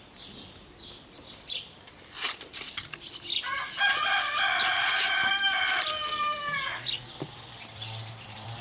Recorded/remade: remade